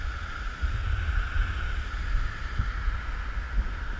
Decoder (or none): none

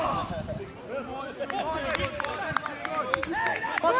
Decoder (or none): none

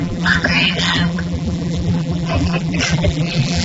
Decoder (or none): vocoder, BigVGAN v2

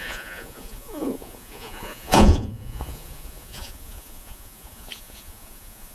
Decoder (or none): vocoder, Vocos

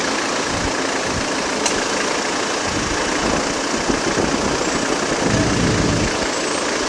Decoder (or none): none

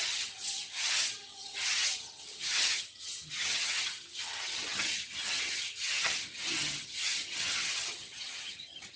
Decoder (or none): vocoder, HiFi-GAN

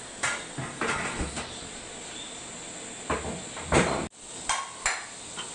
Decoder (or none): none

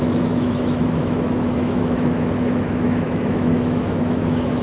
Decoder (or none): autoencoder, DAC-VAE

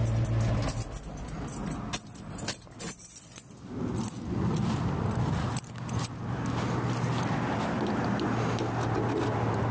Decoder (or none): none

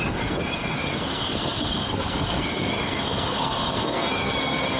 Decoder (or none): codec, SNAC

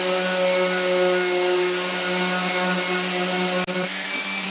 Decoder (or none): none